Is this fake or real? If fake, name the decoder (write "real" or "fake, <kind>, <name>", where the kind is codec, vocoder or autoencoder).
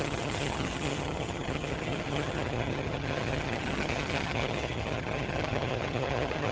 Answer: fake, vocoder, HiFi-GAN